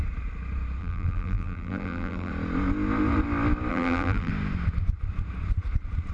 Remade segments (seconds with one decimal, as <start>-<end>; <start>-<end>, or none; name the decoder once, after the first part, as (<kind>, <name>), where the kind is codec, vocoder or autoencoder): 0.8-2.3 (vocoder, BigVGAN v2); 3.7-4.3